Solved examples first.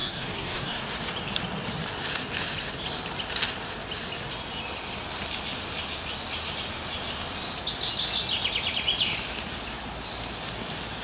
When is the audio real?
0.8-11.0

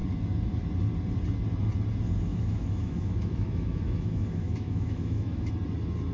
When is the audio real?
0.0-2.3; 5.5-6.1